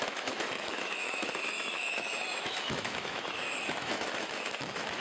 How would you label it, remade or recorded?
remade